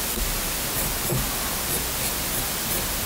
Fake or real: real